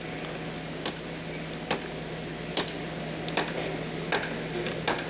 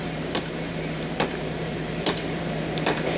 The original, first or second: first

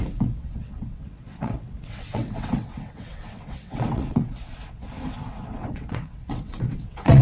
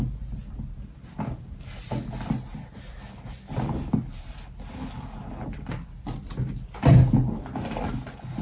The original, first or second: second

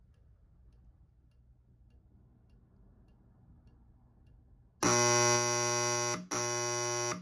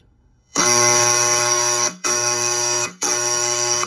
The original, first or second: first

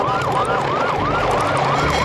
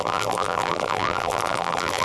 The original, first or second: first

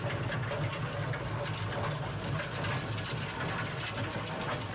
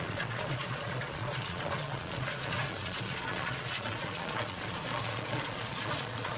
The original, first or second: first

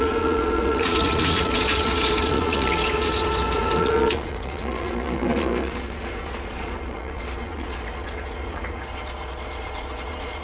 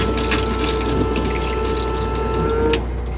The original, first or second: second